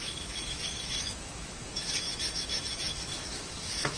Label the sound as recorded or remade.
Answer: remade